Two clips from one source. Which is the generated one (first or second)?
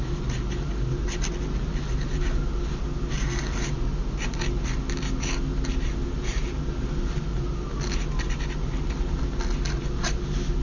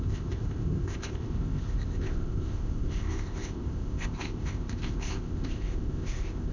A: second